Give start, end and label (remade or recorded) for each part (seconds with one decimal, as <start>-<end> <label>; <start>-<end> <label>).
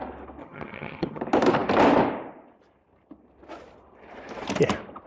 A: 0.0-0.4 recorded; 0.4-1.2 remade; 1.2-5.1 recorded